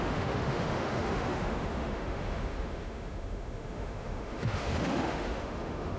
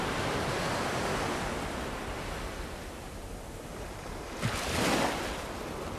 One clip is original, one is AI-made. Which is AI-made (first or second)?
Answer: first